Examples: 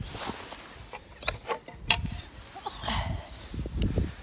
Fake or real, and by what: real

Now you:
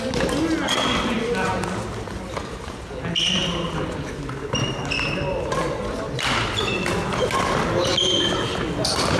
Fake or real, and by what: real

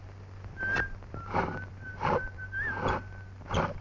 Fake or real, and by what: fake, vocoder, BigVGAN v2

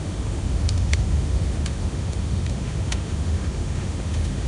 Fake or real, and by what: fake, autoencoder, DAC-VAE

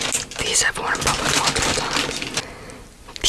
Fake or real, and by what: real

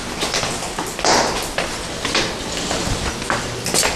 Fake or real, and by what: real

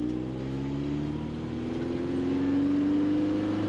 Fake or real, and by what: real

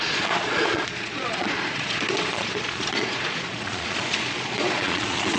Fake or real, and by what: fake, vocoder, Vocos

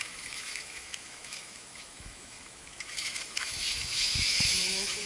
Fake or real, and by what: fake, autoencoder, DAC-VAE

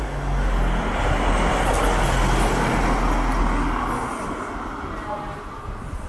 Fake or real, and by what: real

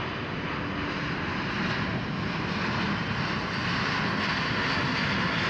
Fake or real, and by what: real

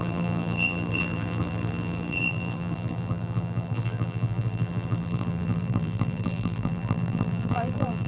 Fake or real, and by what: fake, vocoder, BigVGAN v2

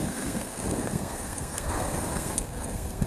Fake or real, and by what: fake, codec, SNAC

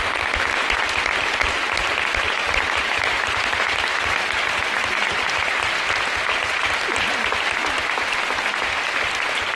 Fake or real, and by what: real